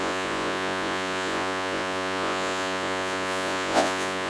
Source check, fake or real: fake